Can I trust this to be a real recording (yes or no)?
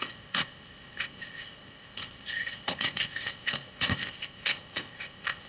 no